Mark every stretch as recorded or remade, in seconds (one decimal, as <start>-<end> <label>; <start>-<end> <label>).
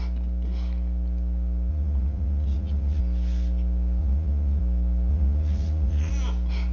0.0-1.7 recorded; 1.7-3.0 remade; 3.0-4.0 recorded; 4.0-4.6 remade; 4.6-5.1 recorded; 5.1-6.1 remade; 6.1-6.7 recorded